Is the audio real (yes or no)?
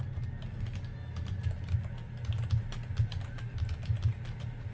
yes